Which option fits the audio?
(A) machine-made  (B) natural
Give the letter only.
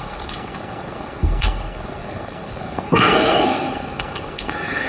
A